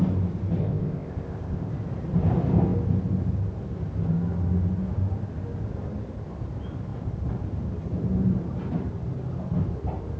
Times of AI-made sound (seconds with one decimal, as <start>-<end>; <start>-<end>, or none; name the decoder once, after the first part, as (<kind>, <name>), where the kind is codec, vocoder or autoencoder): 0.6-1.7 (codec, ZipCodec)